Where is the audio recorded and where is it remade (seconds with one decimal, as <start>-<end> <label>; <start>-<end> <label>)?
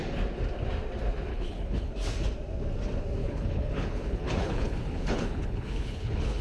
0.0-1.3 recorded; 1.3-1.9 remade; 1.9-3.2 recorded; 3.2-6.4 remade